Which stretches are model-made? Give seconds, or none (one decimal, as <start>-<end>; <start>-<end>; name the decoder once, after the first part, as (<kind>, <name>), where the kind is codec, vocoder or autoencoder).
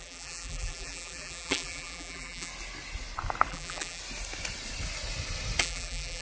0.0-2.5 (vocoder, BigVGAN v2); 3.5-4.0; 5.6-6.2